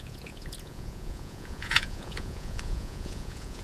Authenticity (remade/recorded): remade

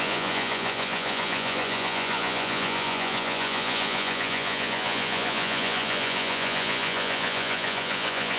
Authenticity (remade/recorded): remade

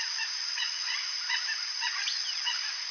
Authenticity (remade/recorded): remade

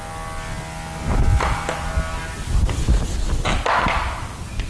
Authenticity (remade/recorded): recorded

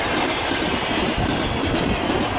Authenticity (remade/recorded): recorded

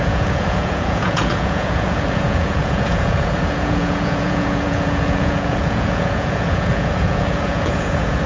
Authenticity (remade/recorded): remade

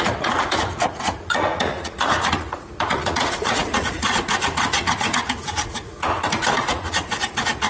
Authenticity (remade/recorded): remade